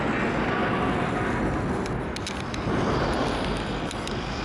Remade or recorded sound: recorded